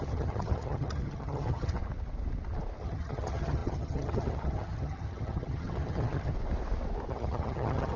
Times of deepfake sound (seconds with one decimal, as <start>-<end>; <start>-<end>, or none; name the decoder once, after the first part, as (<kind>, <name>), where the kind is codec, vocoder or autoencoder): 0.0-1.8 (vocoder, HiFi-GAN); 2.8-6.3; 7.1-8.0